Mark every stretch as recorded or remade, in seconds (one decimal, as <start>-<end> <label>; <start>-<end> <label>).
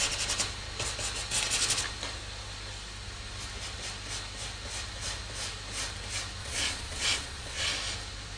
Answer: 0.0-6.4 recorded; 6.4-7.7 remade; 7.7-8.4 recorded